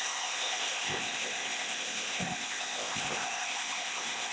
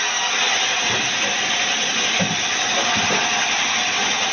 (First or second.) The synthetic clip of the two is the first